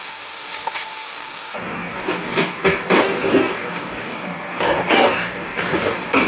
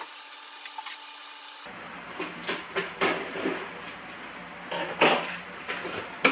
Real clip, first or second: second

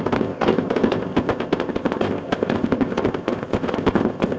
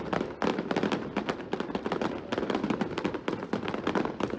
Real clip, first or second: second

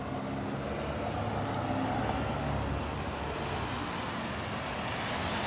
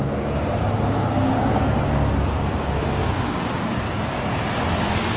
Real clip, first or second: first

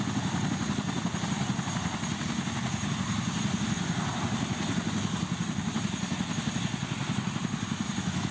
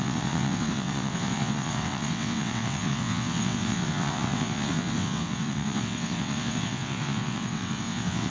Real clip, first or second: first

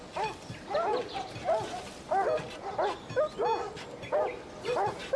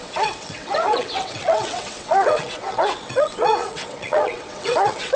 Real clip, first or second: first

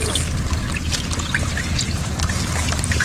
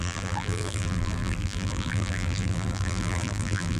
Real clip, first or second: first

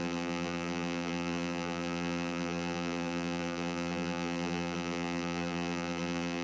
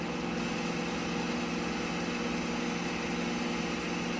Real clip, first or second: second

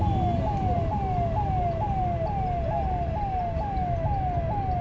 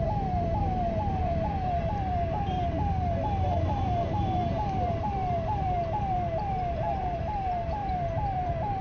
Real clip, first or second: first